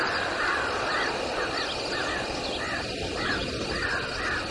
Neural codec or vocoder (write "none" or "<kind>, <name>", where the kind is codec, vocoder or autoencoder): none